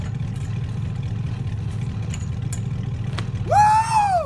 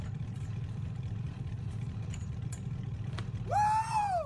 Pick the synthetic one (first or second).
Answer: second